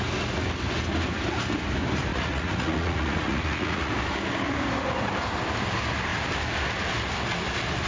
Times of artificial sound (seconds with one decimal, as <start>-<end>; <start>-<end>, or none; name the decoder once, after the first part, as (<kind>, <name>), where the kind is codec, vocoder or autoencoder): 2.1-3.9 (vocoder, Vocos)